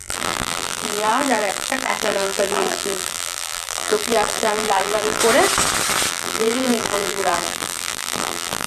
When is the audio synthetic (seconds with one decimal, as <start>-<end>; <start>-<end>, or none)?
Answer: 0.0-5.2; 6.1-8.7